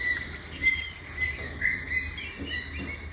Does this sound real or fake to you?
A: real